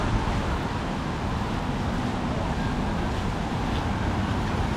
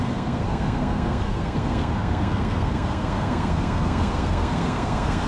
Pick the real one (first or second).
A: first